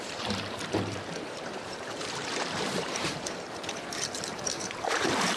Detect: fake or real fake